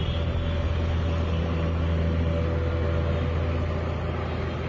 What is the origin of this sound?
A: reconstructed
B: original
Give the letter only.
B